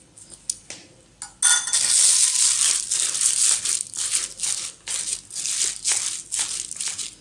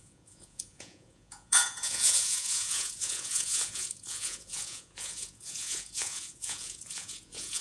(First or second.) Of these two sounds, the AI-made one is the second